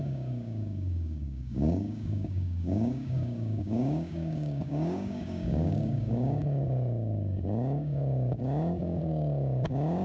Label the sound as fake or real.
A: fake